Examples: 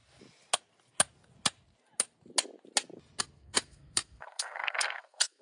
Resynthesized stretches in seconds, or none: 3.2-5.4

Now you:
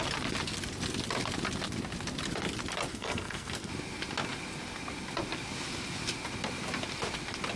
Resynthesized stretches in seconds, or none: 2.9-3.7

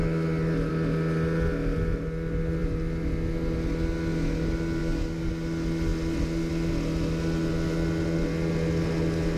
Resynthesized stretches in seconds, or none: 4.8-5.3

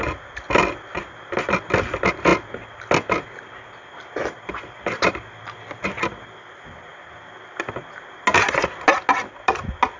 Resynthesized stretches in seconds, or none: none

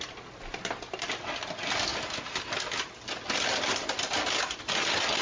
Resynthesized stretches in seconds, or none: none

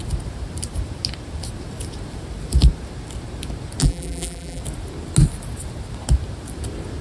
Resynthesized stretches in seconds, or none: 3.8-4.6